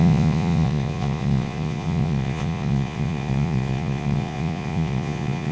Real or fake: fake